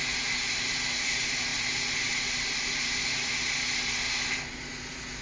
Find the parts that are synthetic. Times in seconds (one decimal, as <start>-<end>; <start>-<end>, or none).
none

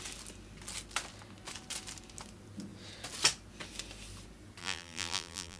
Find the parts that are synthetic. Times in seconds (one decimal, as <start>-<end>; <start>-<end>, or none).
4.6-5.6

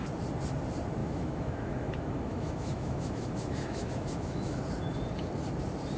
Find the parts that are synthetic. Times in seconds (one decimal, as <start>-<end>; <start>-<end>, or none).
1.0-4.6